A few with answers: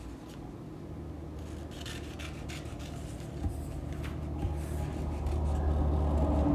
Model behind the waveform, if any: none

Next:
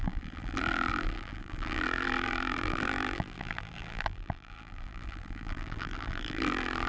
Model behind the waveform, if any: vocoder, BigVGAN v2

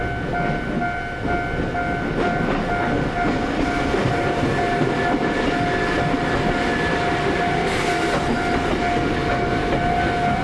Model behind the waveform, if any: none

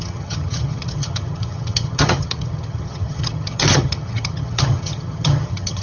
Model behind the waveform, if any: vocoder, HiFi-GAN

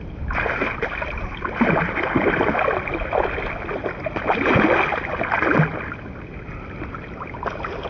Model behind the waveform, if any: none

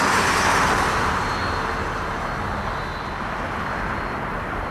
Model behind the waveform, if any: none